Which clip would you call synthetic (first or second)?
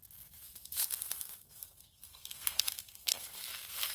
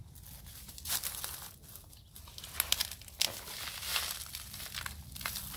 first